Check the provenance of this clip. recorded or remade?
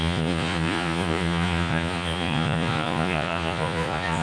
remade